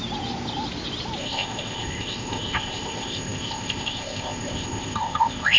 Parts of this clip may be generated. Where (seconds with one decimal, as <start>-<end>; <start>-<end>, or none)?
1.2-5.6